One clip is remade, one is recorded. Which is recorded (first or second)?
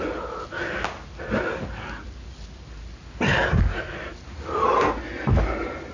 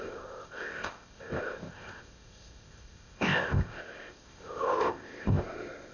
first